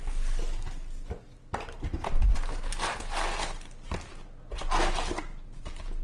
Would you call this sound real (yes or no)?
yes